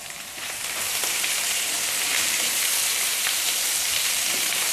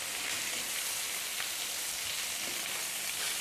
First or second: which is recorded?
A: second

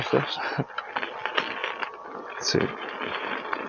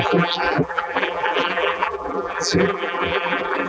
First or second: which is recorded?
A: first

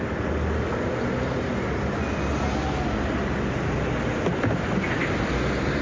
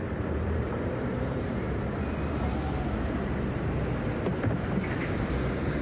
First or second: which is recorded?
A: first